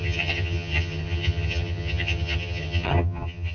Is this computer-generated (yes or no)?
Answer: yes